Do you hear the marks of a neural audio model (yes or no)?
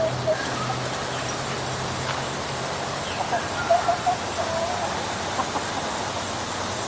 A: no